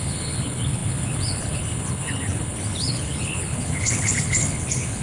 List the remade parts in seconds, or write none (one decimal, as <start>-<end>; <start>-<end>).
0.0-5.0